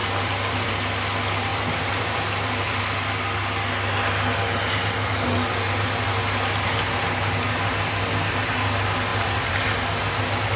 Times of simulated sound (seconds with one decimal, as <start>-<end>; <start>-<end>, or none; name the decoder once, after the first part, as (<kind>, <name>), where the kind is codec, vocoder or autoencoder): 0.0-0.7 (vocoder, BigVGAN v2); 1.5-2.8; 9.1-9.7